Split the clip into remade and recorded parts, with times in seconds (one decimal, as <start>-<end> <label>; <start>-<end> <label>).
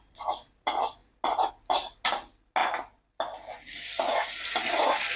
0.0-5.2 recorded